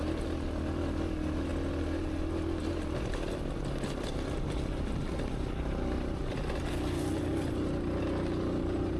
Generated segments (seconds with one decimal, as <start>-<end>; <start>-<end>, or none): none